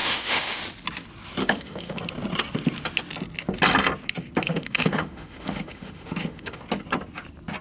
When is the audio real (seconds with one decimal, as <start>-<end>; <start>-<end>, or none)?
0.6-1.4; 2.0-4.4; 6.6-7.6